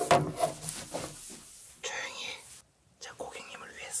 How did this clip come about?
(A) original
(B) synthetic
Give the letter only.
A